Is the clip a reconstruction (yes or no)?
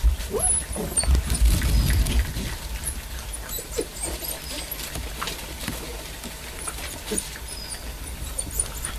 yes